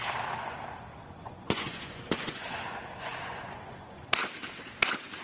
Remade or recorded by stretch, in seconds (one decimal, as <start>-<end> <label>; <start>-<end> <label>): 0.0-1.0 recorded; 1.0-4.1 remade; 4.1-5.2 recorded